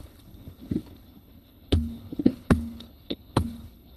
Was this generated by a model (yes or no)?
yes